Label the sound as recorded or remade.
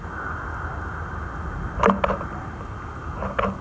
recorded